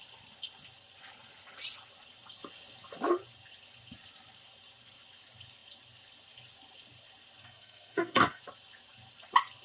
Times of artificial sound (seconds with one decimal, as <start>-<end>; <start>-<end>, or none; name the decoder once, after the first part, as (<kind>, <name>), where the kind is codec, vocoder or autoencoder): 7.4-8.4 (codec, SNAC)